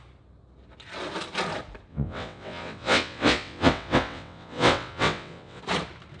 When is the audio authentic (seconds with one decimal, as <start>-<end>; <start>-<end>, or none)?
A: 0.0-1.9; 5.6-6.2